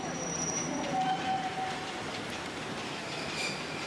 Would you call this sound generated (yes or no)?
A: yes